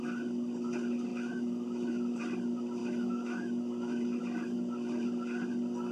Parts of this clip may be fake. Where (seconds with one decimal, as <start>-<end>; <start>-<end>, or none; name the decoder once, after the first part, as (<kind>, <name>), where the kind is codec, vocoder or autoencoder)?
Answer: 1.1-2.2 (autoencoder, DAC-VAE); 2.8-4.2